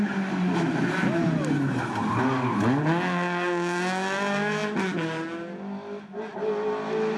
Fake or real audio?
real